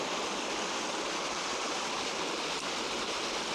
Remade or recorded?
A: recorded